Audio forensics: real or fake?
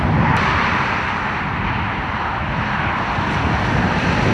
real